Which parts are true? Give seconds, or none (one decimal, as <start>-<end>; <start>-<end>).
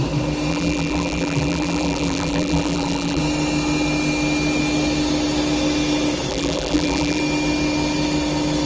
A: 0.0-0.5; 3.2-6.3; 7.2-8.7